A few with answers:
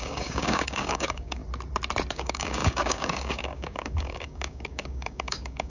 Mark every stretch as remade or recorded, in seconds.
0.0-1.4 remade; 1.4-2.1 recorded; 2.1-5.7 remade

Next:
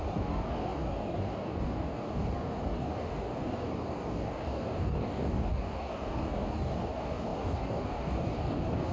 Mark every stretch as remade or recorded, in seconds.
0.0-8.9 remade